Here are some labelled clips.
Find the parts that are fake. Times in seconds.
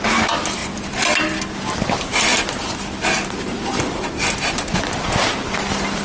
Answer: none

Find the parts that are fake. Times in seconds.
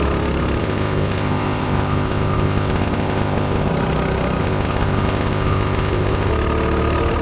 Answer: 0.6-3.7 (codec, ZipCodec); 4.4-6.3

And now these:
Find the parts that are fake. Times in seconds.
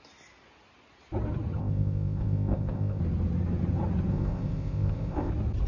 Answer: 1.6-3.0 (codec, ZipCodec); 4.1-5.3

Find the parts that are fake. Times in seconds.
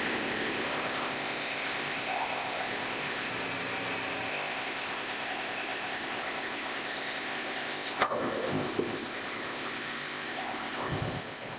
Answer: 0.0-3.3 (codec, ZipCodec); 4.3-11.6